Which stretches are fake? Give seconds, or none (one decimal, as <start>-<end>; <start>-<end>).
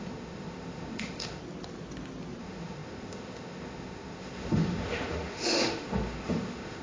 0.0-1.4; 2.4-6.8